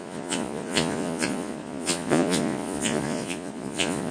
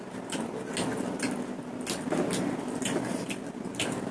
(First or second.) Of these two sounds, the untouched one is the second